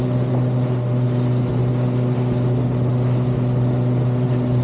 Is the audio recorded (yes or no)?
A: yes